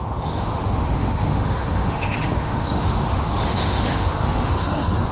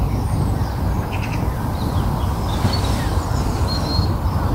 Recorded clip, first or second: second